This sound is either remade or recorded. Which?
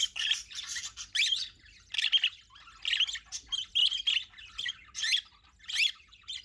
recorded